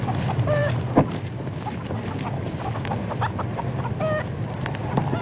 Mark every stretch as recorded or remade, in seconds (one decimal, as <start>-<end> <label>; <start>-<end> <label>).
0.0-5.2 recorded